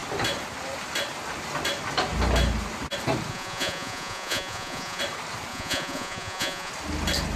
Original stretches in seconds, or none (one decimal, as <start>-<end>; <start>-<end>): 0.0-3.3; 5.0-5.5; 6.7-7.4